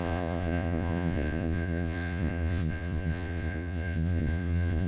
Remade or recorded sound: remade